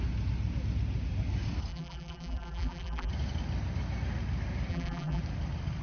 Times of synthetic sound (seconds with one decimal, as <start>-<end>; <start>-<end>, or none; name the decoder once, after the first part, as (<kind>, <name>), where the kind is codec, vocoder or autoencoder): 1.7-3.1 (vocoder, BigVGAN v2); 4.7-5.2